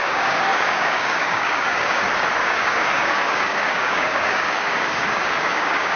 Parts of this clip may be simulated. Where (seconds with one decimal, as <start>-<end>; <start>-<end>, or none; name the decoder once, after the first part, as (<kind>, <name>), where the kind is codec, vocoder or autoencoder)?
0.0-2.0 (codec, DAC); 2.4-6.0